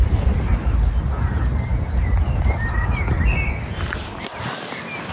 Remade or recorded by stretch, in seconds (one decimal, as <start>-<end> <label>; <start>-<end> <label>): 0.0-5.1 recorded